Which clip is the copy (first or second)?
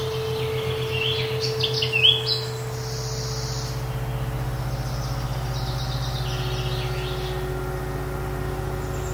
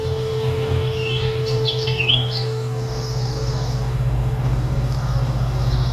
second